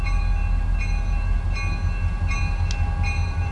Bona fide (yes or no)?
yes